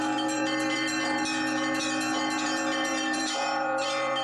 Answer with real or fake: fake